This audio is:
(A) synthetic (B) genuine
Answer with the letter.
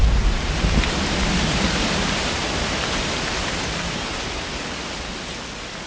B